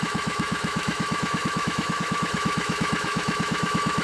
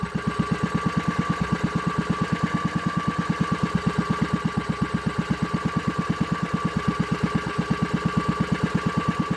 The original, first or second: second